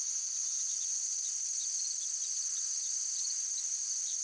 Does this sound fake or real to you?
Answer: real